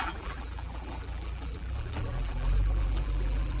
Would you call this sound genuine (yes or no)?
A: no